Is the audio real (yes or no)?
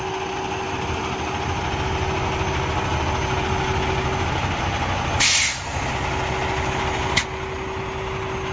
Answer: yes